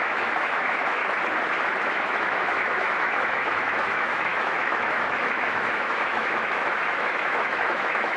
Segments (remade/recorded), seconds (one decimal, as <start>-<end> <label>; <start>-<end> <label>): 0.0-1.0 remade; 1.0-1.8 recorded; 1.8-8.2 remade

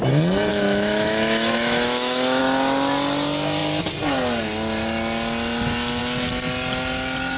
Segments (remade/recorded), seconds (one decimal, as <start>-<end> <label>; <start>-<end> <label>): 0.0-0.5 recorded; 0.5-2.4 remade; 2.4-7.4 recorded

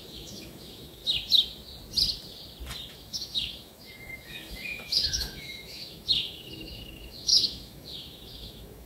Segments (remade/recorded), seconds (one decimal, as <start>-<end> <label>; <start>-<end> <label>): 0.0-1.0 remade; 1.0-2.9 recorded; 2.9-8.9 remade